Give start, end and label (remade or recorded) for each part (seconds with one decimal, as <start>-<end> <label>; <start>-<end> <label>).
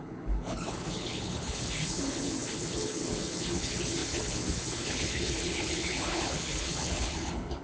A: 0.0-7.6 remade